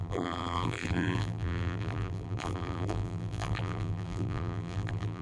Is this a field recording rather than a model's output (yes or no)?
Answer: no